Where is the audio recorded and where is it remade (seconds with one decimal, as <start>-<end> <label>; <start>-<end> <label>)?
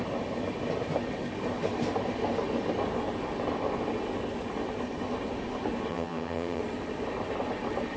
0.0-5.9 recorded; 5.9-6.6 remade; 6.6-8.0 recorded